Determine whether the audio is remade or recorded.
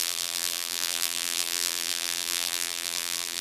remade